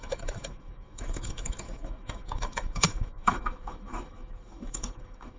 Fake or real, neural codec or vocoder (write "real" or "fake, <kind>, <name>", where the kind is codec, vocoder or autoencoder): fake, autoencoder, DAC-VAE